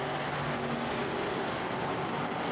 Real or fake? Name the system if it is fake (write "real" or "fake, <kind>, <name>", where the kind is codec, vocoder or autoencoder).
real